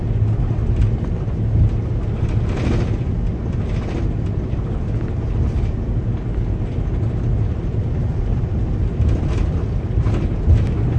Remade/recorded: recorded